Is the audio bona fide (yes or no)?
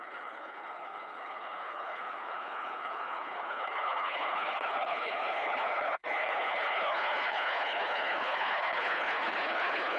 no